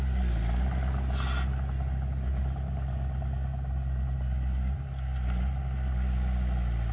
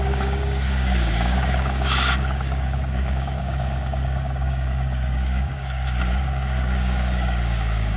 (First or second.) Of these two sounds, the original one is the first